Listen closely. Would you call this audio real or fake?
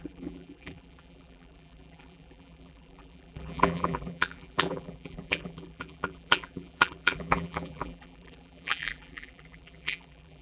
fake